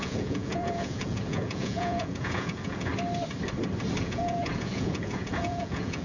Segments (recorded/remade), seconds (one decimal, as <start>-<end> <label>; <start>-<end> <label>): 0.0-2.9 remade; 2.9-4.0 recorded; 4.0-6.0 remade

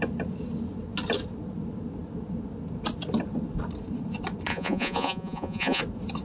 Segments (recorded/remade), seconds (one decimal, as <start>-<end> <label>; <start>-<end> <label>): 0.0-4.5 recorded; 4.5-5.8 remade; 5.8-6.2 recorded